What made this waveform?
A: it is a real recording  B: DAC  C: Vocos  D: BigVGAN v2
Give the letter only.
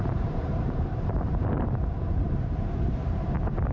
D